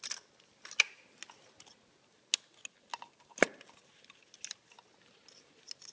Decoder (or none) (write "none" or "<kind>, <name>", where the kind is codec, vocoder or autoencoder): none